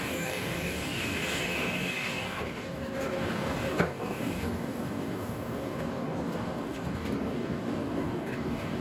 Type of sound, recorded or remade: remade